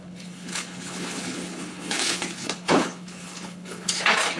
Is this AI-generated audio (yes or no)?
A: yes